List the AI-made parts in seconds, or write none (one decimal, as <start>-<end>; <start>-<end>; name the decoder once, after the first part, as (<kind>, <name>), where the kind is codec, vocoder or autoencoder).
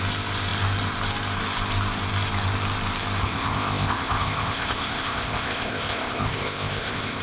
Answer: 3.2-7.2 (codec, ZipCodec)